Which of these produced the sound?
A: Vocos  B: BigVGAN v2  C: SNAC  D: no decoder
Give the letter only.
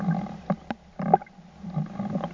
D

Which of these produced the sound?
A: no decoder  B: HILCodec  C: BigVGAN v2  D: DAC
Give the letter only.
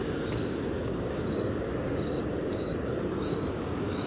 D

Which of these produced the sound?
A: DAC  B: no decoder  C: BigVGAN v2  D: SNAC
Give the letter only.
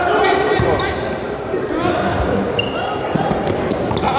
C